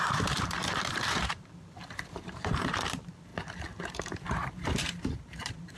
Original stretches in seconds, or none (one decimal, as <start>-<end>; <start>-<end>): 3.3-3.9